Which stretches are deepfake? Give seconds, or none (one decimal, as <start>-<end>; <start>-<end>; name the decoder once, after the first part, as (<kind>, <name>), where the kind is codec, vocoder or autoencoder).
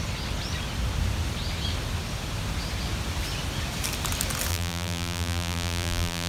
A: 4.5-6.3 (vocoder, BigVGAN v2)